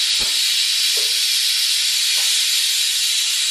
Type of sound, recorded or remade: recorded